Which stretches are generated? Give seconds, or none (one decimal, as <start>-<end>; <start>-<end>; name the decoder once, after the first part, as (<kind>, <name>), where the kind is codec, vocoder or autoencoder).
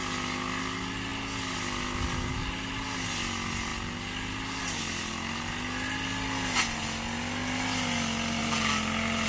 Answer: none